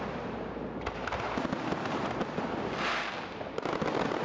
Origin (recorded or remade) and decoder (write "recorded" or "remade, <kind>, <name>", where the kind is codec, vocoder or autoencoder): recorded